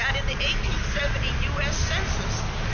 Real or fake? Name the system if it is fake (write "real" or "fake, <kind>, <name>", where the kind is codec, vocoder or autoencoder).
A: real